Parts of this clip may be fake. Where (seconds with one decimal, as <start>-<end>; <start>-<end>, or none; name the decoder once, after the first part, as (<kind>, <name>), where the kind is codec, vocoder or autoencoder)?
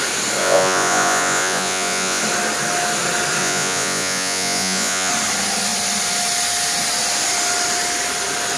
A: 0.4-2.2 (vocoder, Vocos); 3.4-5.1